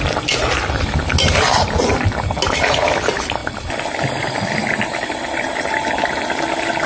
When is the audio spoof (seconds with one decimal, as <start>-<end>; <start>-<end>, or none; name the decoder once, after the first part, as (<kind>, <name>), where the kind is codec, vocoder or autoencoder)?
none

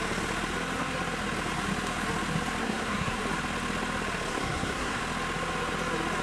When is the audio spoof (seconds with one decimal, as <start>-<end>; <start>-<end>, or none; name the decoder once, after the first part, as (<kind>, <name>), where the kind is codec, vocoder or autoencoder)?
2.6-3.2 (codec, SNAC); 4.3-5.0